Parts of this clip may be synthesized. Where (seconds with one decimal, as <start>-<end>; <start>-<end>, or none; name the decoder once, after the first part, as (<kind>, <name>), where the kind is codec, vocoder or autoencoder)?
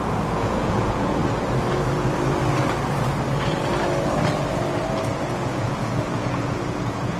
0.0-1.2 (vocoder, Vocos); 5.1-7.2